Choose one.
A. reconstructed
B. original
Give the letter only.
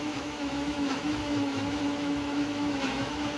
A